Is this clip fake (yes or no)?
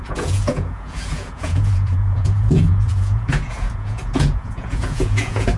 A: yes